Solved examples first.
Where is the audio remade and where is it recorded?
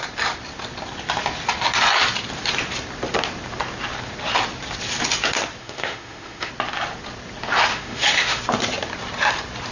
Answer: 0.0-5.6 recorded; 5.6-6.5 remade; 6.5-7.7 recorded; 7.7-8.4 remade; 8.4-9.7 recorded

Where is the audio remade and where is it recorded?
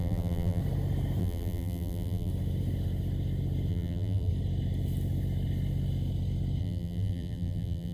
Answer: 0.0-0.6 remade; 0.6-1.2 recorded; 1.2-2.3 remade; 2.3-3.7 recorded; 3.7-4.3 remade; 4.3-6.6 recorded; 6.6-7.9 remade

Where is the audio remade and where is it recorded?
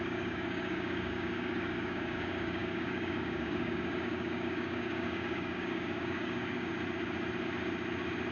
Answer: 0.0-6.7 remade; 6.7-8.3 recorded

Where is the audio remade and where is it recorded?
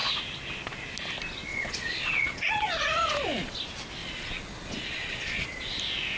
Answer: 0.0-1.5 recorded; 1.5-3.6 remade; 3.6-4.0 recorded; 4.0-5.8 remade; 5.8-6.2 recorded